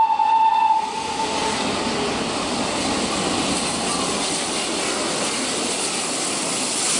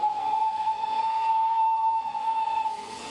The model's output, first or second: second